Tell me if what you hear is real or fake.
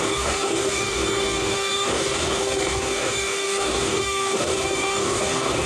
fake